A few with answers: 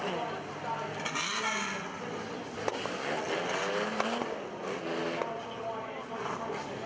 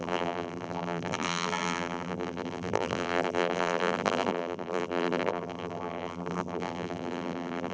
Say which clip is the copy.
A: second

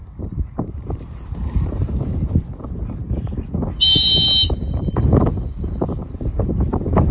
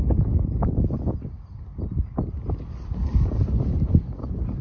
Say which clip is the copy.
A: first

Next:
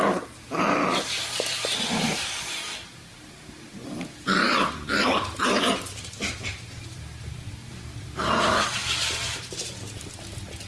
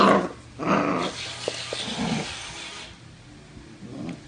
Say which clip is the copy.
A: first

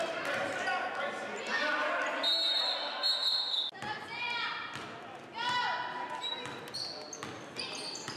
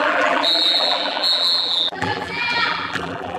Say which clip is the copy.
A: second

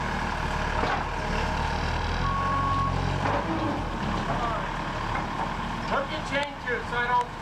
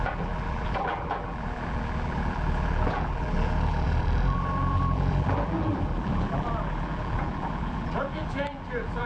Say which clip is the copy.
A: second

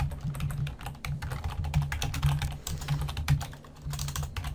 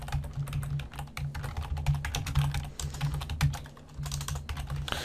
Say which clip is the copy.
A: first